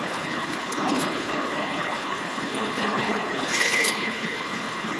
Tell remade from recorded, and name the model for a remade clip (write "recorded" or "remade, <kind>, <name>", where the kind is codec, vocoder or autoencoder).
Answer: remade, codec, HILCodec